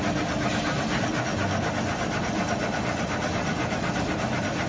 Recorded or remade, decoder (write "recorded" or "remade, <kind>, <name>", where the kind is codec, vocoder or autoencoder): recorded